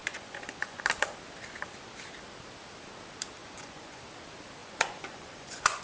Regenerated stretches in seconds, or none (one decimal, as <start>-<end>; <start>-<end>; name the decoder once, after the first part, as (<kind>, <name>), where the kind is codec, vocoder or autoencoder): 0.0-0.8 (vocoder, Vocos); 3.4-4.0; 4.6-5.8